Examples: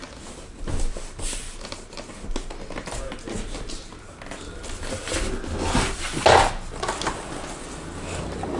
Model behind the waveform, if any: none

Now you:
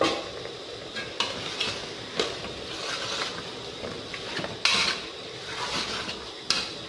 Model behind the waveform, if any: none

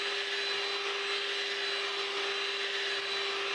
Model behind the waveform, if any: none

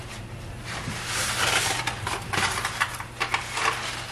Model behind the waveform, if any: none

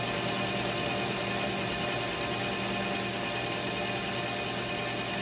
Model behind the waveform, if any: none